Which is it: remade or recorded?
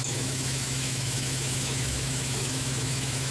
remade